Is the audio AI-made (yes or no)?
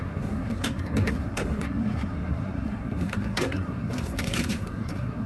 yes